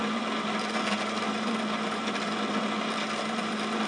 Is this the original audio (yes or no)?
no